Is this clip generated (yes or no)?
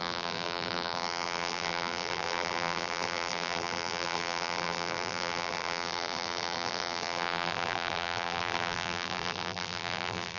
yes